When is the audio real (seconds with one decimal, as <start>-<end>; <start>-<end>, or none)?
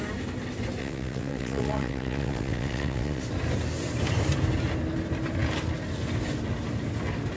0.0-0.8; 3.2-7.4